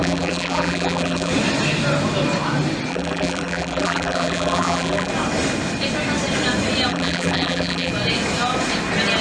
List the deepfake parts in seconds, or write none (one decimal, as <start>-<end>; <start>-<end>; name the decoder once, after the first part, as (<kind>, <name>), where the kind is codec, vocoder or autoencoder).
0.0-1.3 (vocoder, BigVGAN v2); 2.9-5.1; 6.9-7.9